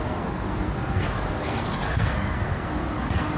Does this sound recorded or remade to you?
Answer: remade